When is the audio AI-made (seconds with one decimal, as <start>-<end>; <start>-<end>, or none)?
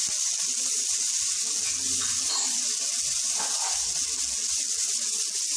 none